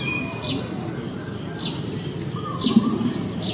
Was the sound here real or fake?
real